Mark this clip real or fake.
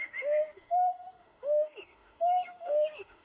fake